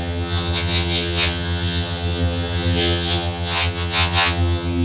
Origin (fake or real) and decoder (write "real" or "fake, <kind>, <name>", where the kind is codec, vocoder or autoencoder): fake, vocoder, HiFi-GAN